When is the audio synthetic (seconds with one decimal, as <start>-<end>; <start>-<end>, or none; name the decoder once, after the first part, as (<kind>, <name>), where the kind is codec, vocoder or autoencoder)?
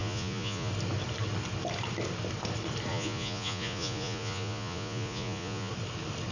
0.0-0.7 (vocoder, Vocos); 2.9-5.7